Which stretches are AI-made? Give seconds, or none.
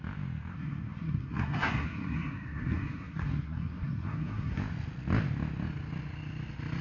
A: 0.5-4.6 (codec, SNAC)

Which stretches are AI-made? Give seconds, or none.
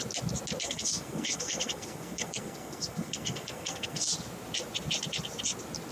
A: 0.6-4.1 (codec, SNAC)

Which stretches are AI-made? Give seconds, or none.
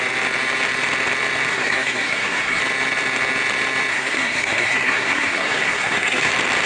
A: 1.5-2.6 (codec, SNAC); 3.9-6.3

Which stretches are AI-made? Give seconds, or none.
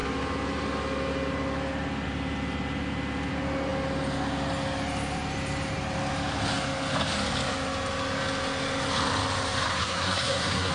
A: 9.7-10.7 (codec, SNAC)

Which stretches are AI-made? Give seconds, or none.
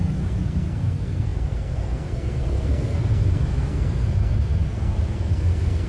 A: 0.0-5.9 (codec, SNAC)